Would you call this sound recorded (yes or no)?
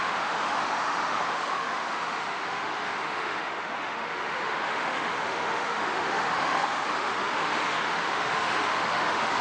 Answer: no